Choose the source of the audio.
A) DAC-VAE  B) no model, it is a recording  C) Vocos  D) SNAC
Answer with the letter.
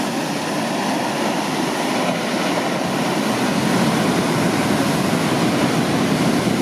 B